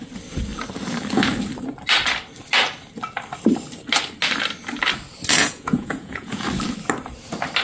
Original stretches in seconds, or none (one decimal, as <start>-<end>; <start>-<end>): 0.0-5.4; 6.4-7.6